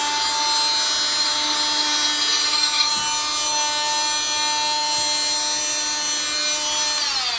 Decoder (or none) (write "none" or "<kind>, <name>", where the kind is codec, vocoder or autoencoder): none